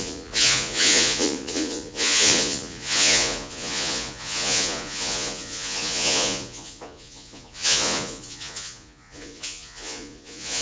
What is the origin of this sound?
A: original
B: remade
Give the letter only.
B